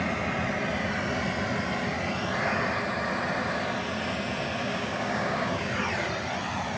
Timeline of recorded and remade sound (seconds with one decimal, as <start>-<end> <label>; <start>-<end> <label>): 0.0-4.6 recorded; 4.6-5.7 remade; 5.7-6.8 recorded